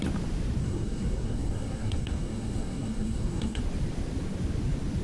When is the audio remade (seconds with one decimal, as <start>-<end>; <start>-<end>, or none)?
0.6-3.6